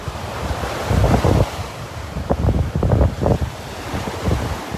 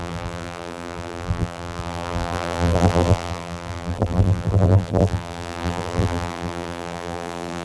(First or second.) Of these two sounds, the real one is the first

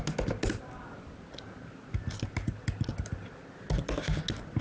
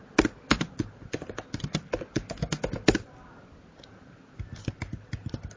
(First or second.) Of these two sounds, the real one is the first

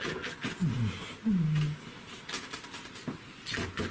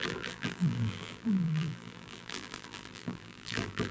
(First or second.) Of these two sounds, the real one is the first